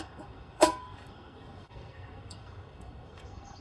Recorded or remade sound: remade